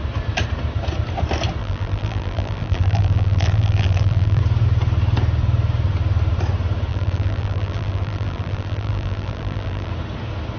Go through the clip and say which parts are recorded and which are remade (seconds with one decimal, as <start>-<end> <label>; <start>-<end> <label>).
0.0-1.6 recorded; 1.6-4.4 remade; 4.4-6.9 recorded; 6.9-9.9 remade; 9.9-10.6 recorded